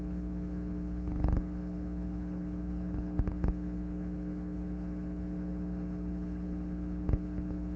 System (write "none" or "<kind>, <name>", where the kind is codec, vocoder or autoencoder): codec, HILCodec